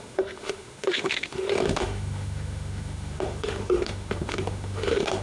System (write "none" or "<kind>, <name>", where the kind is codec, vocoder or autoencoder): autoencoder, DAC-VAE